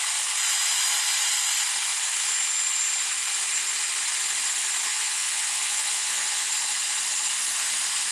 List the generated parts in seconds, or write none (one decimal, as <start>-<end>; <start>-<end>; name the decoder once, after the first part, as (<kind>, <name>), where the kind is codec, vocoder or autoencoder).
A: 4.9-6.5 (vocoder, Vocos)